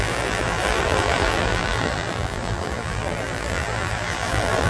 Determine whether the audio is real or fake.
fake